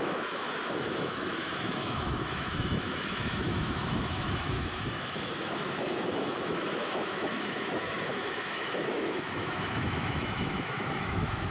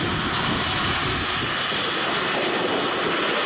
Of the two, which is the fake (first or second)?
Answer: first